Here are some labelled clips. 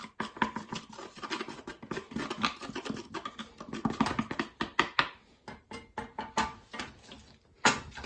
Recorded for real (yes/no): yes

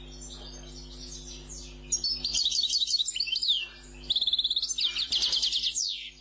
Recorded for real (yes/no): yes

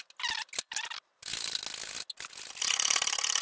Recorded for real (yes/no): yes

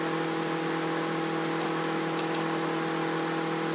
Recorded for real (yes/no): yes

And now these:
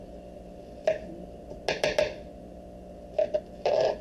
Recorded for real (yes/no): yes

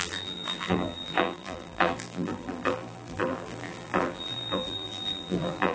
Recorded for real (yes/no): no